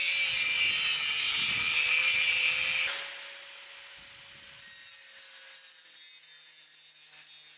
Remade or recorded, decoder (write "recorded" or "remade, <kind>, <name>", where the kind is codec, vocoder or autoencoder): recorded